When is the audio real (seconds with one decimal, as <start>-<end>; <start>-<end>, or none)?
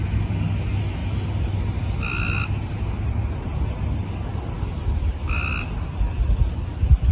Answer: 0.0-4.0; 5.0-7.1